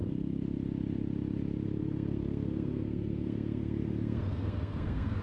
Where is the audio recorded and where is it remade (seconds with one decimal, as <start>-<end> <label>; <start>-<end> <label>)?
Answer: 0.0-1.8 recorded; 1.8-5.2 remade